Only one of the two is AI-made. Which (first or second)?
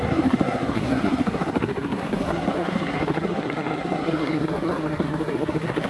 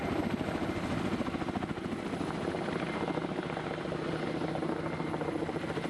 first